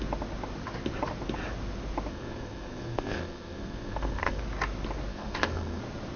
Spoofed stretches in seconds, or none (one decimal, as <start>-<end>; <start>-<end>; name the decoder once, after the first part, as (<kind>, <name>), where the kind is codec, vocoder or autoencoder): 2.1-4.4 (codec, SNAC); 5.1-5.8